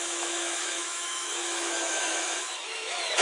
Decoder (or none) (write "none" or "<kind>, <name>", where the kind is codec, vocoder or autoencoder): autoencoder, DAC-VAE